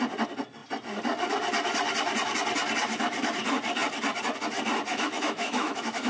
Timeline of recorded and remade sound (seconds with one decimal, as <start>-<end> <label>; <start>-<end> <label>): 0.0-4.9 recorded; 4.9-6.1 remade